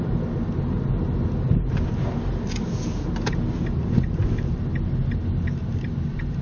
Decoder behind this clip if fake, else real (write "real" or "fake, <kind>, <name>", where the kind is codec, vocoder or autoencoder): real